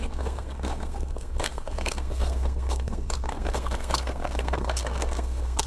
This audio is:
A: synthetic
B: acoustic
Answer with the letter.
A